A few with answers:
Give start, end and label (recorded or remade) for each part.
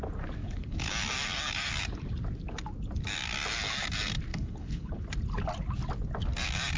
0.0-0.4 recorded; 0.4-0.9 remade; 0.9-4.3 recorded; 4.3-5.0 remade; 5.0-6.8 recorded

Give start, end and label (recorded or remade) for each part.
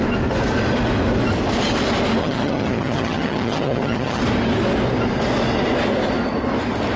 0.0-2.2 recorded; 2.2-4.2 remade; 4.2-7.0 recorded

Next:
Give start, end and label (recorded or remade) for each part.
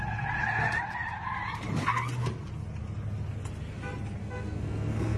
0.0-4.2 recorded; 4.2-5.2 remade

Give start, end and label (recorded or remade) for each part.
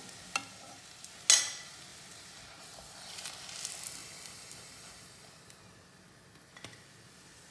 0.0-0.4 recorded; 0.4-1.1 remade; 1.1-1.9 recorded; 1.9-3.3 remade; 3.3-4.0 recorded; 4.0-5.5 remade; 5.5-7.5 recorded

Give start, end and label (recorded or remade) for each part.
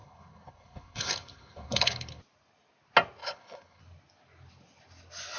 0.0-2.2 remade; 2.2-3.2 recorded; 3.2-3.8 remade; 3.8-5.4 recorded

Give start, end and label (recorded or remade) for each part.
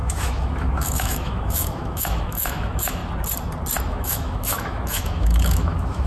0.0-3.0 remade; 3.0-3.8 recorded; 3.8-6.1 remade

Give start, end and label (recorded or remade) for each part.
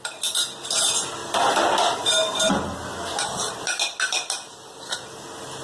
0.0-5.6 recorded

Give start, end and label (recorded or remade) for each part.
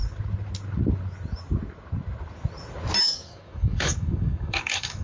0.0-3.0 recorded; 3.0-5.0 remade